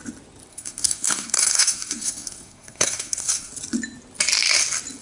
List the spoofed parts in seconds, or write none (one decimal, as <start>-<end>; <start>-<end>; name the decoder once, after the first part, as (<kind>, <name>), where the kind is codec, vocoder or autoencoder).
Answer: 0.5-3.5 (codec, SNAC)